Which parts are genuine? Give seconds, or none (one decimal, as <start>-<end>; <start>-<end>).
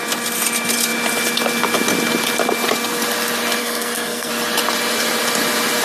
0.0-3.6; 4.3-5.8